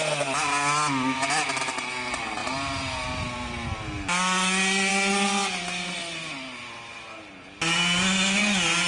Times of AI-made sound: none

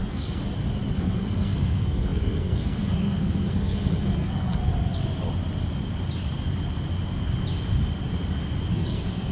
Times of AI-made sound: 0.0-0.4 (codec, SNAC); 0.9-4.6; 8.7-9.3

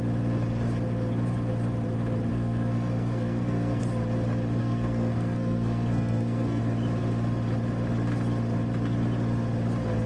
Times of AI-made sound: 2.3-3.8 (codec, SNAC); 4.6-6.6

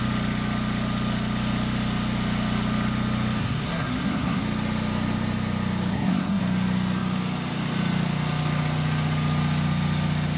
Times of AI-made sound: 3.4-4.4 (codec, SNAC); 5.9-6.4

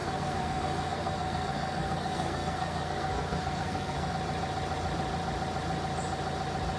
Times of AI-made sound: 0.0-4.1 (codec, SNAC)

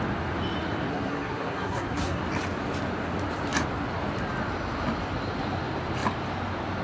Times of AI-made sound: 0.9-2.2 (codec, SNAC)

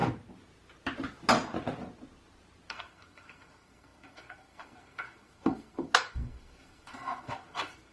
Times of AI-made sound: 2.7-7.9 (codec, SNAC)